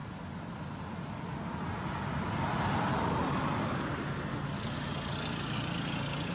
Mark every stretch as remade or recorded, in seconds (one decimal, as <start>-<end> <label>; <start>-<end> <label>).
0.0-6.3 recorded